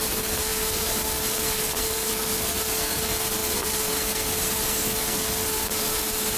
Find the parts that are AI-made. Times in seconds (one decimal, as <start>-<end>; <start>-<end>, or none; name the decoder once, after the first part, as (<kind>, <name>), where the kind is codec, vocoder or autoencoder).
0.0-6.4 (codec, SNAC)